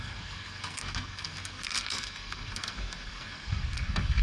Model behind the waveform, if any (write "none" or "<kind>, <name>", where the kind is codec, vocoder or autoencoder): codec, SNAC